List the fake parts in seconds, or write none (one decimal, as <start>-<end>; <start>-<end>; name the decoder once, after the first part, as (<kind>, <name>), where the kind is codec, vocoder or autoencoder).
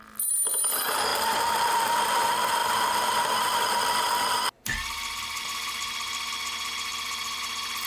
1.1-2.0 (vocoder, BigVGAN v2); 2.6-5.4; 6.9-7.4